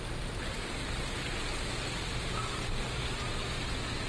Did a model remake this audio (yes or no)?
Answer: no